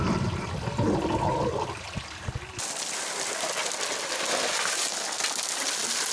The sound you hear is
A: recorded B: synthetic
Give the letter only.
A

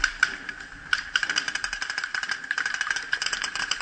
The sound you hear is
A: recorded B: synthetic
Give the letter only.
B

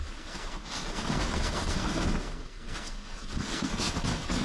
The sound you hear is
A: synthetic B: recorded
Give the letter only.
A